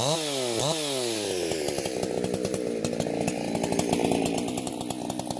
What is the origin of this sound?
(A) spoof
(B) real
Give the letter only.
B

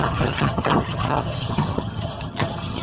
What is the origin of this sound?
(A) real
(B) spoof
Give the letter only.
B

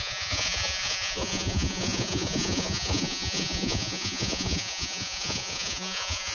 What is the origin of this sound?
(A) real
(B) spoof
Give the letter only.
B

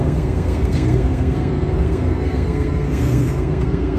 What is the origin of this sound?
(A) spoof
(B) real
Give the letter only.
A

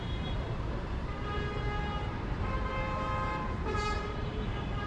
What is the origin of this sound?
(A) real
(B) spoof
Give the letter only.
B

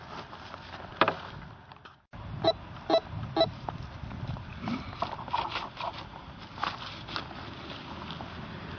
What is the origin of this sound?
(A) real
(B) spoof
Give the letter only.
A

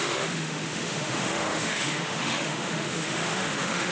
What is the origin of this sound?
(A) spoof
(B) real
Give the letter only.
A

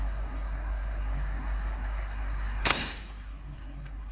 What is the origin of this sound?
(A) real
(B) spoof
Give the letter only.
B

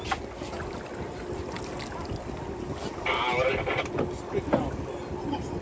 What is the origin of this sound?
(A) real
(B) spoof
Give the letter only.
A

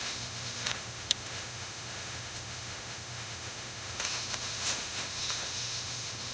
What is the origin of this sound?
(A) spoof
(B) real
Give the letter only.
A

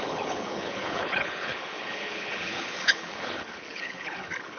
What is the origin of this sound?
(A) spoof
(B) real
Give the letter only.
A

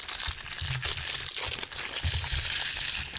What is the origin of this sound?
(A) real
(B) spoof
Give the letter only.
A